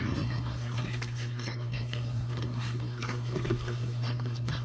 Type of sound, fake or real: fake